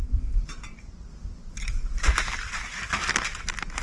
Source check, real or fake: real